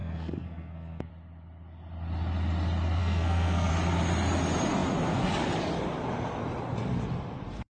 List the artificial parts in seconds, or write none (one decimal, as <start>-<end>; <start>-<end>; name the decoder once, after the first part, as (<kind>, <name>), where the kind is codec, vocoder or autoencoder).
0.0-1.1 (codec, SNAC); 3.0-3.7